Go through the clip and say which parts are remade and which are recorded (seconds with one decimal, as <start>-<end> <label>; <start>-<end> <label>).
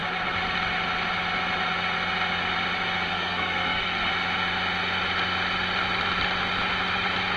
0.0-3.1 recorded; 3.1-4.1 remade; 4.1-7.4 recorded